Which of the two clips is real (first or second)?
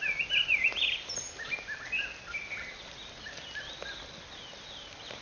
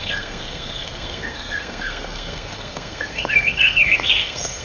first